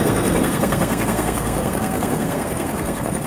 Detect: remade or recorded remade